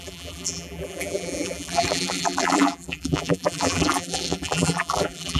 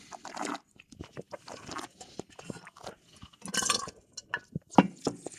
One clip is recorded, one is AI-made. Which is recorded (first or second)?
second